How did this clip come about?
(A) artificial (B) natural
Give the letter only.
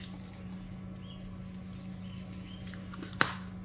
B